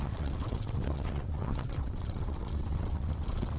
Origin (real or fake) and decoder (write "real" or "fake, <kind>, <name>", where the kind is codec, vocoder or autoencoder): fake, vocoder, WaveNeXt